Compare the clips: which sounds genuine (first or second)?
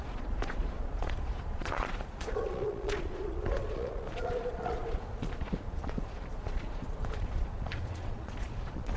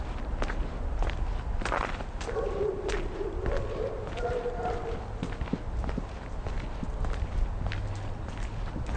second